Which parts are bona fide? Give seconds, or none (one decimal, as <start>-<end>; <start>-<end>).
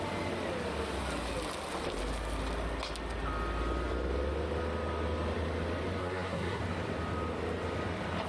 0.0-6.0; 6.6-8.3